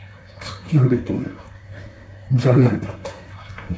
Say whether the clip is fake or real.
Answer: fake